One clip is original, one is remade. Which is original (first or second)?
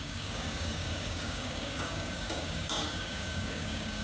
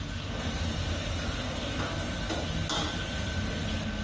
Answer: second